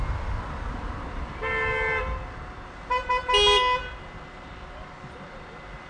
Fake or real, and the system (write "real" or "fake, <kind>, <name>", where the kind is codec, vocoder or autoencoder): real